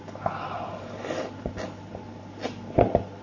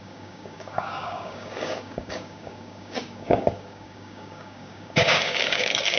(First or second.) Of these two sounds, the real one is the first